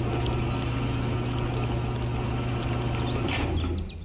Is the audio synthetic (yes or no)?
no